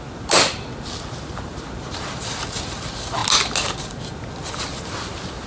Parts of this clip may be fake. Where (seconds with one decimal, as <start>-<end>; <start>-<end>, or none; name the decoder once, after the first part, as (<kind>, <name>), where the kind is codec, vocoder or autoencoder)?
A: none